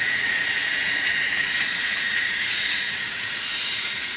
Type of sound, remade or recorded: remade